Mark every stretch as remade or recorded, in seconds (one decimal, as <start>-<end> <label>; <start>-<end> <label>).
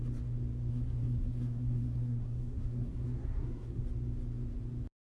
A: 0.0-0.7 recorded; 0.7-3.8 remade; 3.8-5.1 recorded